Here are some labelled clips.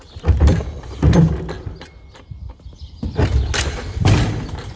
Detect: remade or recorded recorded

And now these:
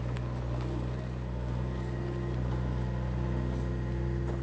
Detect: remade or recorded recorded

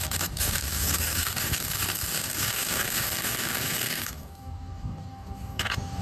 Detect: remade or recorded remade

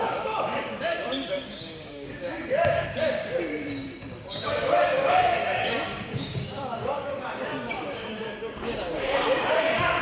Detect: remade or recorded remade